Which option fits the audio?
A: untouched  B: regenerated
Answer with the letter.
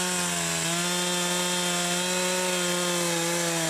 A